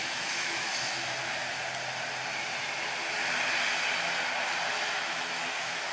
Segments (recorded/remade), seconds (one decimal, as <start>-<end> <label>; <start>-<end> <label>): 0.0-1.2 remade; 1.2-4.7 recorded; 4.7-5.9 remade